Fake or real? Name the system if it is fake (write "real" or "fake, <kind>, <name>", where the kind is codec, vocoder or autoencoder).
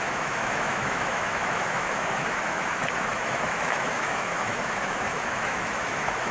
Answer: fake, autoencoder, DAC-VAE